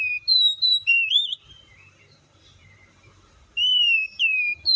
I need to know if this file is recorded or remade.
remade